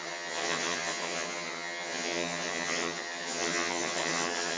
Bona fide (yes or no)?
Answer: no